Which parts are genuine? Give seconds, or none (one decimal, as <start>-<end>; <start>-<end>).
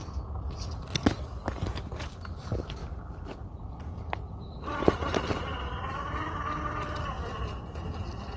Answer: 0.0-8.4